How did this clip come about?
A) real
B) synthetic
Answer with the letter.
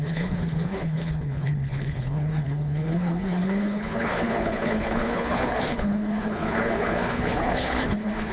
B